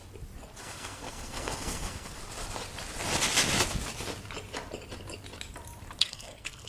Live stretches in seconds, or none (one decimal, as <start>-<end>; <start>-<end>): 0.0-0.6; 2.2-6.0